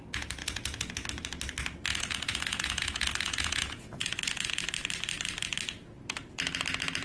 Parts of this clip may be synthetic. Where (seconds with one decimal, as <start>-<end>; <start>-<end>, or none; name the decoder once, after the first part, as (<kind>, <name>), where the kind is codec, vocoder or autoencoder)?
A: 0.4-1.1 (vocoder, Vocos); 1.9-4.6